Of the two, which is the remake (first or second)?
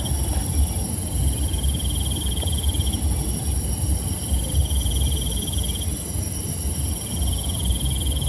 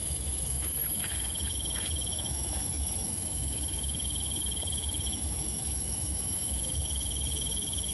second